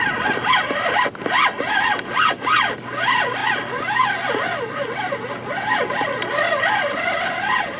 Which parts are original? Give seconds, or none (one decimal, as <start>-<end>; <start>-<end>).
0.0-7.8